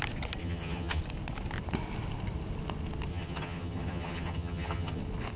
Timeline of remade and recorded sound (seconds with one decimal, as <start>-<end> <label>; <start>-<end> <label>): 0.0-0.4 recorded; 0.4-1.0 remade; 1.0-3.1 recorded; 3.1-5.0 remade; 5.0-5.4 recorded